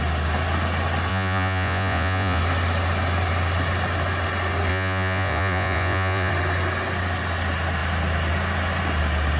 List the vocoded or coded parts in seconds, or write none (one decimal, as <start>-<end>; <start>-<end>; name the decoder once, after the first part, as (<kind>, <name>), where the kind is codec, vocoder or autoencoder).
1.1-2.4 (vocoder, Vocos); 4.7-6.3